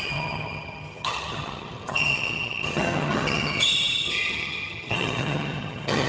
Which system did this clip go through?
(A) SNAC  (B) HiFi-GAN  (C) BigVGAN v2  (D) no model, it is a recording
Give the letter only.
B